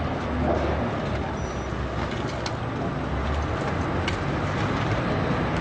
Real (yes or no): yes